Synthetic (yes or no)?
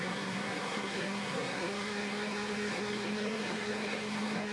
yes